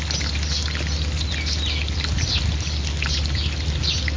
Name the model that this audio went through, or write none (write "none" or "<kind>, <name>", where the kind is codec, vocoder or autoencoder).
none